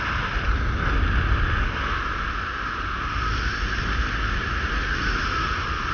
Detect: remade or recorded recorded